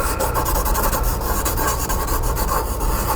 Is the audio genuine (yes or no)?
no